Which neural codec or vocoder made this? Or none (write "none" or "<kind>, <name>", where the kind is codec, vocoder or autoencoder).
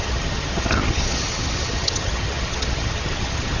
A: vocoder, HiFi-GAN